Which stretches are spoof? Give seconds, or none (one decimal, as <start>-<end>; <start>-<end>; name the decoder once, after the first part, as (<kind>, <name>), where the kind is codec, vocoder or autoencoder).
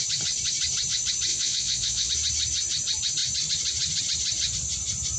1.3-2.1 (vocoder, Vocos)